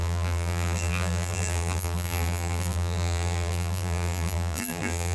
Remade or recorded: remade